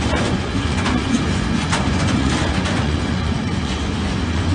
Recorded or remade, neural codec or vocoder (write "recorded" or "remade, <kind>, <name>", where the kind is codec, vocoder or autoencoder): remade, vocoder, Vocos